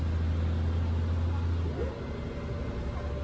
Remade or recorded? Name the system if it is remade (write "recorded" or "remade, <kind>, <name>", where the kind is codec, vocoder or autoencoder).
recorded